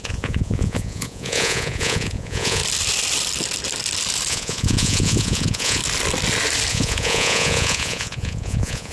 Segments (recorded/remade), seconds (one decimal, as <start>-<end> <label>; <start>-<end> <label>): 0.0-2.6 remade; 2.6-4.3 recorded; 4.3-5.8 remade; 5.8-6.7 recorded; 6.7-8.9 remade

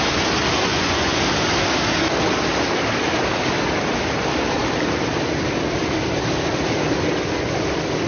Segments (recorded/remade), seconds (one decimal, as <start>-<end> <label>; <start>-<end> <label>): 0.0-0.7 recorded; 0.7-1.2 remade; 1.2-8.1 recorded

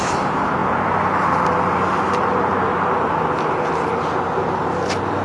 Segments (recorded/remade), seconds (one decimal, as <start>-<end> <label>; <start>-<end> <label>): 0.0-5.2 recorded

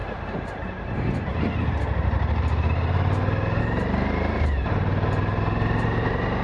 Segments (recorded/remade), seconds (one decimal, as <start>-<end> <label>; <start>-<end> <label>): 0.0-6.4 recorded

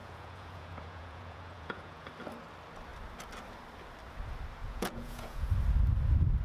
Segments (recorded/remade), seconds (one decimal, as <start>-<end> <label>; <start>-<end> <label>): 0.0-2.1 remade; 2.1-4.6 recorded; 4.6-5.5 remade; 5.5-6.4 recorded